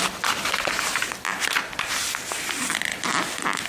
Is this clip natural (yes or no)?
yes